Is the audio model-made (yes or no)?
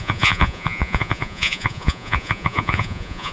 yes